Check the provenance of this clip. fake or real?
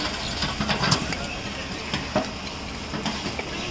real